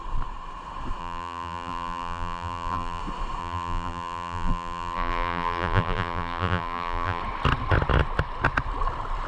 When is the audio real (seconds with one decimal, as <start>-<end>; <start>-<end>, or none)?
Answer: 0.0-1.0; 3.0-3.4; 7.2-9.3